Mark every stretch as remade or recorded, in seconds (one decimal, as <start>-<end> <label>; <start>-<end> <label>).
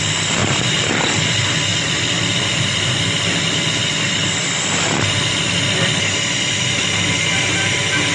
0.0-0.4 recorded; 0.4-1.1 remade; 1.1-1.7 recorded; 1.7-4.8 remade; 4.8-8.1 recorded